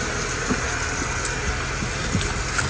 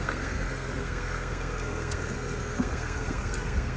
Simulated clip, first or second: second